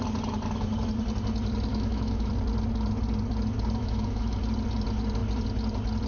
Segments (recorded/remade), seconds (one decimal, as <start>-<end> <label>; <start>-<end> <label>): 0.0-1.7 recorded; 1.7-2.3 remade; 2.3-3.8 recorded; 3.8-4.4 remade; 4.4-6.1 recorded